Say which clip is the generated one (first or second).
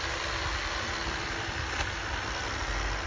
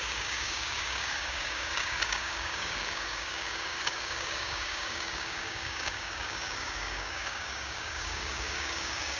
second